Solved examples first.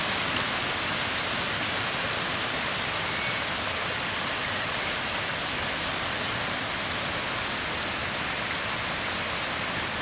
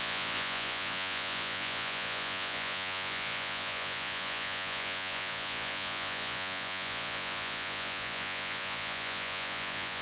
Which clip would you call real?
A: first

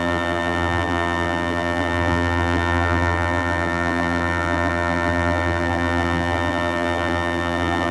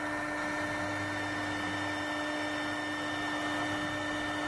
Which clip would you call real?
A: second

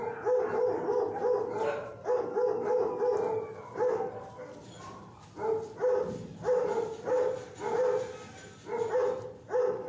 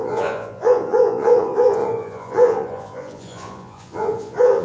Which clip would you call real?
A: first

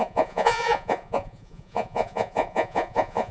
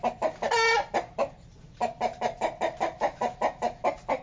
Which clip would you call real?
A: second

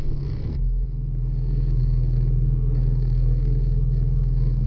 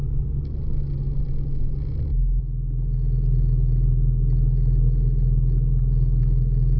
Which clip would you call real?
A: second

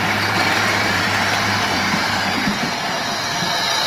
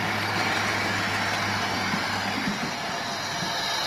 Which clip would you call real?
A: second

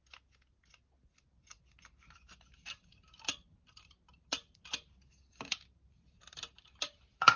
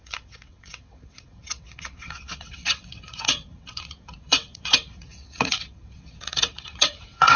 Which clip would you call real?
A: first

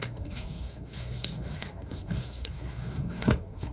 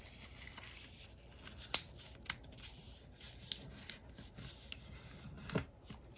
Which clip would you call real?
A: second